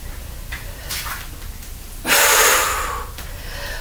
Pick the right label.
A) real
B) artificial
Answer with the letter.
A